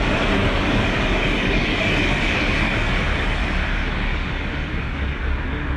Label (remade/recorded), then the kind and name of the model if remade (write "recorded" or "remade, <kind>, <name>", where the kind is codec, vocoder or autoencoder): remade, codec, DAC